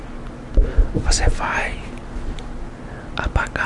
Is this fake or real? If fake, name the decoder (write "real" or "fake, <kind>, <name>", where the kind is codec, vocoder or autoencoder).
real